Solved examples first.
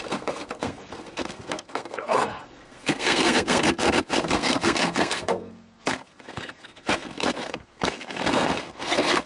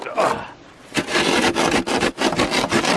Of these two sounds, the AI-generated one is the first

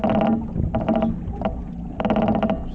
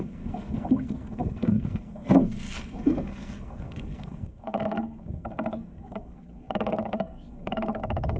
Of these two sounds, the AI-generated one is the second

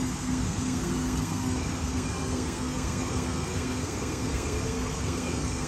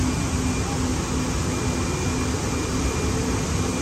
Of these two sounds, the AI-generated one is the first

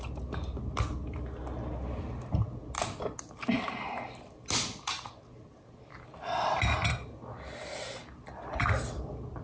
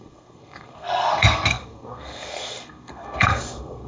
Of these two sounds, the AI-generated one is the second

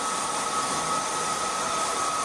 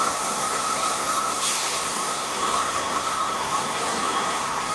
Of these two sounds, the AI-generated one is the second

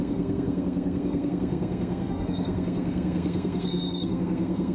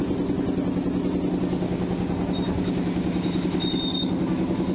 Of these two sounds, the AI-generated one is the first